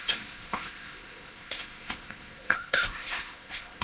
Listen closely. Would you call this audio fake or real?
fake